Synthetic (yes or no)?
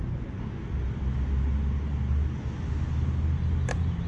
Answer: no